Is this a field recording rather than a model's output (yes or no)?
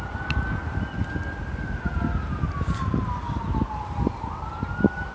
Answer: yes